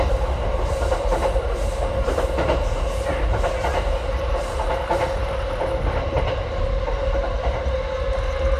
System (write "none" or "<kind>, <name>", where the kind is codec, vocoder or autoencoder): none